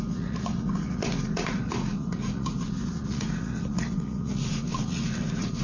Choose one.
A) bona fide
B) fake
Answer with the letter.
B